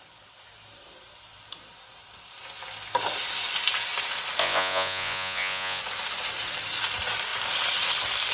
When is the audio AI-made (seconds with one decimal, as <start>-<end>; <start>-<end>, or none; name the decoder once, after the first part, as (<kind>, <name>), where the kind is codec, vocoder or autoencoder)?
4.4-5.8 (vocoder, Vocos)